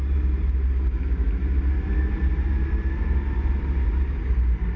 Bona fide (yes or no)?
yes